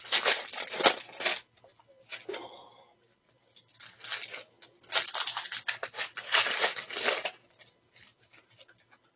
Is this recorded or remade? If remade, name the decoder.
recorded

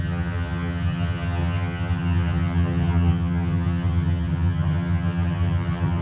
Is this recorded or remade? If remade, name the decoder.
remade, vocoder, HiFi-GAN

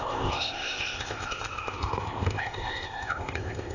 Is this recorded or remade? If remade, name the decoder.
remade, codec, ZipCodec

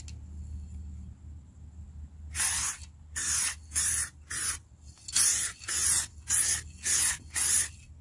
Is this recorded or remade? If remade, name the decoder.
recorded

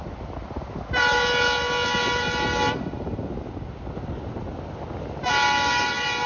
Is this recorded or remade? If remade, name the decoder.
recorded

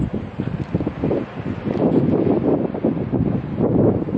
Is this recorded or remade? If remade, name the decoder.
recorded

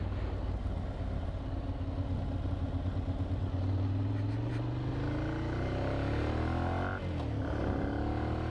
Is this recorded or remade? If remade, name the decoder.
recorded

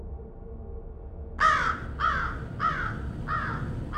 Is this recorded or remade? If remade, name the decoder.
recorded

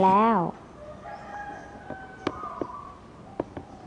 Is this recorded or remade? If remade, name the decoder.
recorded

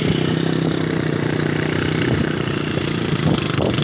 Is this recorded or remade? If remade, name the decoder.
remade, vocoder, BigVGAN v2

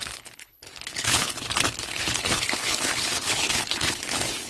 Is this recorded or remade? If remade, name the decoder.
remade, codec, HILCodec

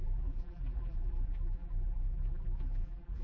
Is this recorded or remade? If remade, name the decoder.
remade, vocoder, BigVGAN v2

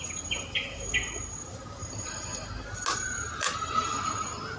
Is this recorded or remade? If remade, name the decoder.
recorded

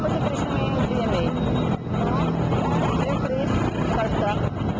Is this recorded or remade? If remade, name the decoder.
recorded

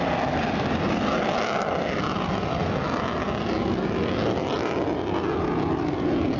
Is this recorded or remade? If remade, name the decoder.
recorded